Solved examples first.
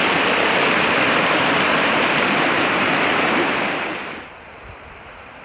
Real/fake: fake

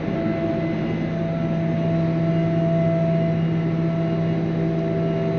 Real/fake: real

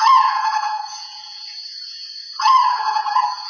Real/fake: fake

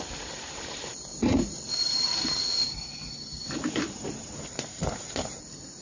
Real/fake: fake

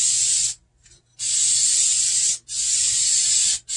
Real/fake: real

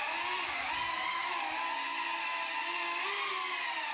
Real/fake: real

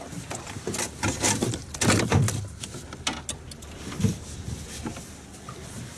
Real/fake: real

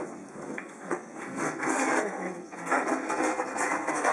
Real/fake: fake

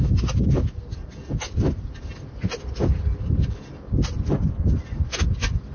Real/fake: real